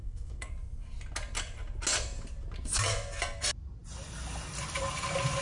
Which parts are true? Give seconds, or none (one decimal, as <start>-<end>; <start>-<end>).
0.5-5.4